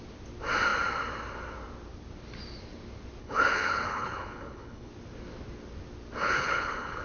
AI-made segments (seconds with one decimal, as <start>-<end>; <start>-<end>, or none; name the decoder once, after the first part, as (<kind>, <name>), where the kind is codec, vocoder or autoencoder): 3.2-4.9 (codec, HILCodec); 6.2-7.0